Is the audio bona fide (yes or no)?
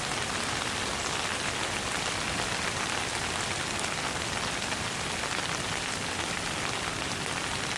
yes